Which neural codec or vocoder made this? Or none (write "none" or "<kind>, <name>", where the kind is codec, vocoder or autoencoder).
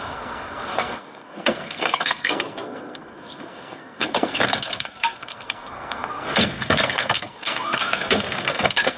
codec, SNAC